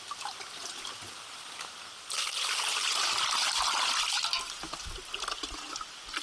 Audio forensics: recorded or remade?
recorded